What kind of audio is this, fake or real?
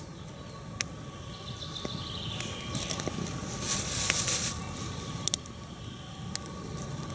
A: real